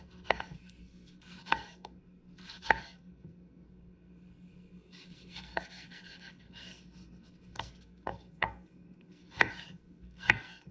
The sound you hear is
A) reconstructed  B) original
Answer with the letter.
A